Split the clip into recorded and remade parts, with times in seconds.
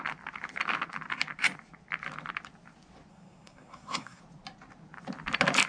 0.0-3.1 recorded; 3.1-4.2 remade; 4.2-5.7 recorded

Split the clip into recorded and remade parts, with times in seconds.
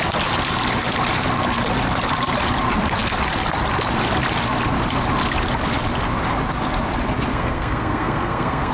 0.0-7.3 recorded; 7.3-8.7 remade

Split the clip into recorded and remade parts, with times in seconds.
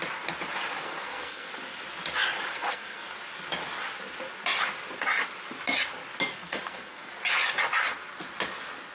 0.0-0.8 recorded; 0.8-1.5 remade; 1.5-2.5 recorded; 2.5-3.1 remade; 3.1-6.3 recorded; 6.3-7.1 remade; 7.1-8.9 recorded